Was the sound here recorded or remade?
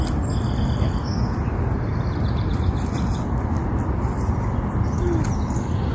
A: recorded